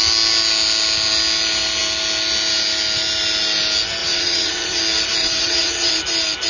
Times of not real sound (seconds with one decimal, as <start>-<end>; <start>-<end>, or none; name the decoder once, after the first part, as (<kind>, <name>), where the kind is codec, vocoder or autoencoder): 4.0-4.8 (vocoder, WaveNeXt); 5.2-5.9